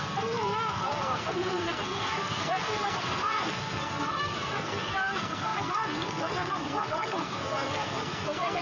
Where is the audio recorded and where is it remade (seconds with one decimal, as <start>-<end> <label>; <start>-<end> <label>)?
0.0-8.6 remade